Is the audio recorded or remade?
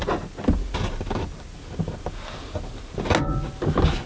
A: recorded